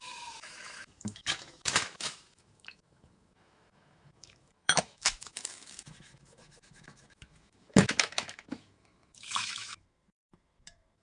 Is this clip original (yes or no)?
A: no